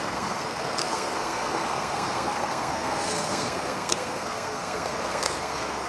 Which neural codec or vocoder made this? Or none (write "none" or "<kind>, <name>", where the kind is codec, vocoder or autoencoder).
codec, SNAC